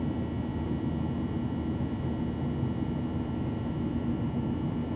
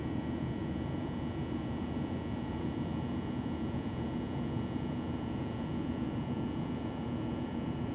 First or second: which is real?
first